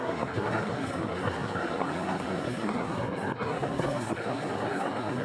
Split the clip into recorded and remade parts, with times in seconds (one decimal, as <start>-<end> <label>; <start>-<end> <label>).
0.0-5.2 remade